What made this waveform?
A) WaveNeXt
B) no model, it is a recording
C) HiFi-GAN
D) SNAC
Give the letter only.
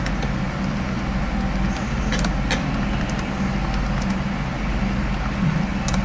B